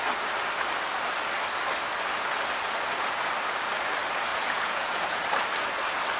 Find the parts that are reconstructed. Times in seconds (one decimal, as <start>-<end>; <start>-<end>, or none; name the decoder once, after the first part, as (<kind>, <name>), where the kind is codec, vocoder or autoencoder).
4.3-5.2 (vocoder, Vocos)